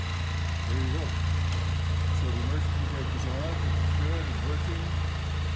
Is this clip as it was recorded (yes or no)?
yes